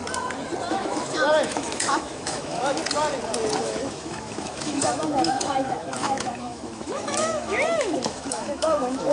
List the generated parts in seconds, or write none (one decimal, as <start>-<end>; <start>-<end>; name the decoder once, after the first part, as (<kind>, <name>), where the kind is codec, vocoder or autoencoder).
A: 0.7-2.8 (autoencoder, DAC-VAE); 3.6-9.1

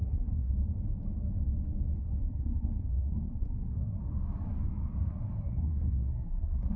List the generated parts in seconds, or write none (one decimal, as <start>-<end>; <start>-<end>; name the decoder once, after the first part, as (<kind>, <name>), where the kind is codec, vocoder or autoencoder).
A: 0.0-0.5 (codec, SNAC); 2.0-4.0; 5.0-6.8

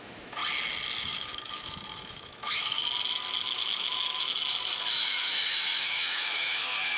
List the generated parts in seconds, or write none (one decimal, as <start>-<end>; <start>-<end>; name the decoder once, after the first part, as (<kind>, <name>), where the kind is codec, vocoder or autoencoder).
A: 0.0-0.4 (autoencoder, DAC-VAE); 1.0-2.8; 3.4-4.4; 4.9-7.0